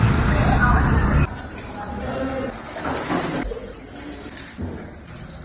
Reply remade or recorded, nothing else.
recorded